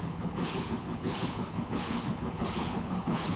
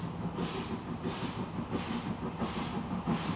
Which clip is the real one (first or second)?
second